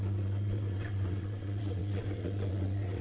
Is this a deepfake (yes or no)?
yes